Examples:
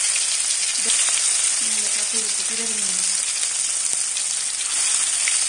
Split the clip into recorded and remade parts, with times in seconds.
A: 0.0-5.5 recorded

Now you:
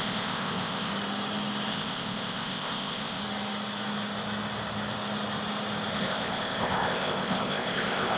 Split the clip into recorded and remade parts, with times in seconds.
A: 0.0-0.9 remade; 0.9-1.7 recorded; 1.7-3.2 remade; 3.2-5.9 recorded; 5.9-8.2 remade

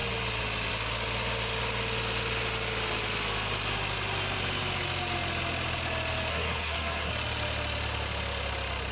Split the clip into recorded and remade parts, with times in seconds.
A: 0.0-6.3 recorded; 6.3-7.1 remade; 7.1-8.9 recorded

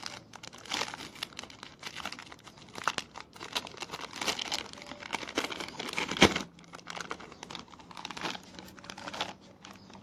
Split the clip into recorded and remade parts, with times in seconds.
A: 0.0-10.0 recorded